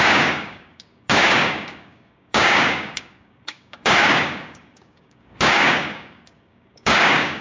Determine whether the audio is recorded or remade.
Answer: remade